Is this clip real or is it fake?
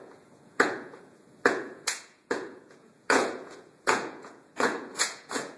fake